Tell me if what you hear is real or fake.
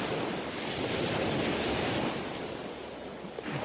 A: real